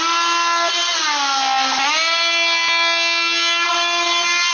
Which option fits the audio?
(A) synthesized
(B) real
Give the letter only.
B